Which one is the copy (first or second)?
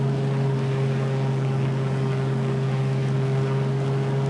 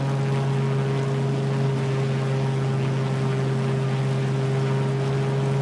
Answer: first